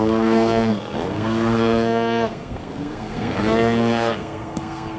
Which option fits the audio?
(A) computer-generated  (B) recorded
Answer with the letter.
A